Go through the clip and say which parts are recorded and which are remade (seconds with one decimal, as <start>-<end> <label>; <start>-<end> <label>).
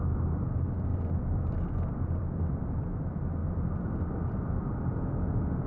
0.0-0.9 recorded; 0.9-2.6 remade; 2.6-5.7 recorded